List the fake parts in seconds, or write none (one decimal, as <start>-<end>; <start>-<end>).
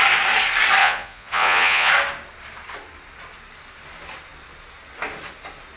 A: 0.8-1.9